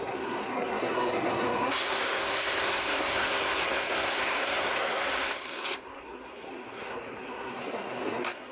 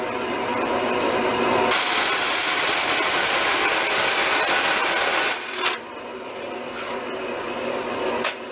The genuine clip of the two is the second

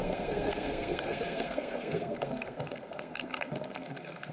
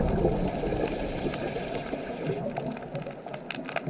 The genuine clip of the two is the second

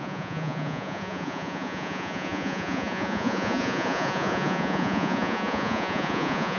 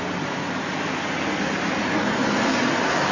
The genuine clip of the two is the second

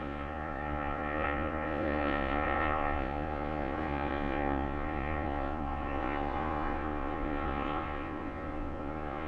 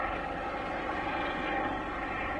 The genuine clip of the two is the second